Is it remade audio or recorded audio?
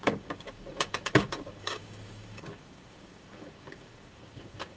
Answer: remade